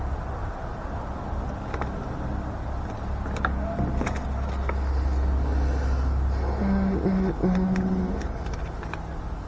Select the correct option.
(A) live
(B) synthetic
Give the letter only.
A